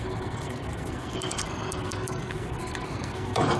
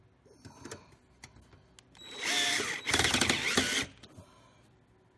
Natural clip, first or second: second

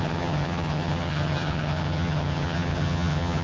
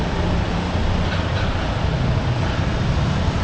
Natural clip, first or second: second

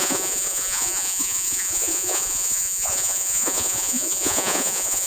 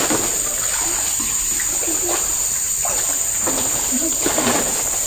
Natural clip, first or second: second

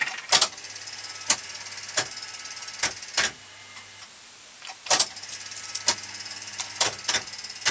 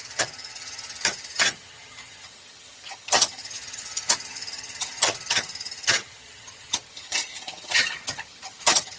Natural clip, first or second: first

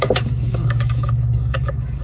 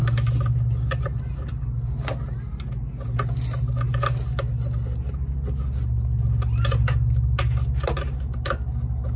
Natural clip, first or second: second